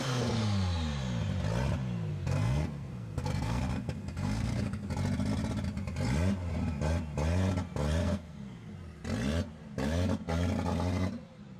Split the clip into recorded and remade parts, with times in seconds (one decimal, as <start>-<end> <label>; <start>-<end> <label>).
0.0-2.1 recorded; 2.1-4.9 remade; 4.9-8.0 recorded; 8.0-8.7 remade; 8.7-11.6 recorded